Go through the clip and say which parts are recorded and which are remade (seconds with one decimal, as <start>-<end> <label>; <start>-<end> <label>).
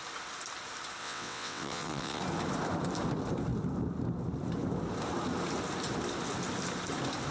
0.0-1.0 recorded; 1.0-2.2 remade; 2.2-7.3 recorded